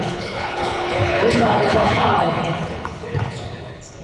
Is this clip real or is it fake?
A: fake